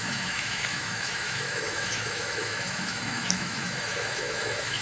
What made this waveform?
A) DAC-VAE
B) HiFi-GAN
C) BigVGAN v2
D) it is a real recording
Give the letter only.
A